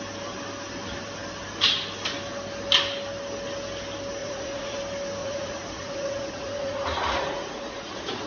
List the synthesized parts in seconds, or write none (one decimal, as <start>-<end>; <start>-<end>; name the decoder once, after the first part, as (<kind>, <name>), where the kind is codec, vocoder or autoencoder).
4.2-4.8 (vocoder, Vocos); 5.2-8.3